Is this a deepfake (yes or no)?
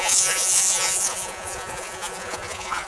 yes